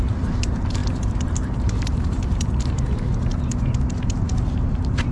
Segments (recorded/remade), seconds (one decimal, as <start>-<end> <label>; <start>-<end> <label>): 0.0-5.1 remade